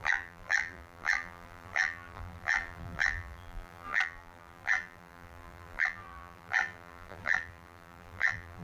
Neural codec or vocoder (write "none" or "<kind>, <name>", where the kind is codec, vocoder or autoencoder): vocoder, BigVGAN v2